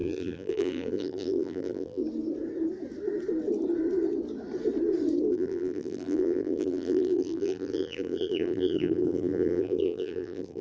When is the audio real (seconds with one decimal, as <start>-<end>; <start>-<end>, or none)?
2.0-5.3